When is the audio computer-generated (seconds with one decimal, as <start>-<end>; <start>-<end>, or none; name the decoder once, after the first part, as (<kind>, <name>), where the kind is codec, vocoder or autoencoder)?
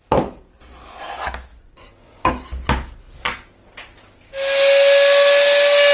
1.5-2.3 (vocoder, Vocos)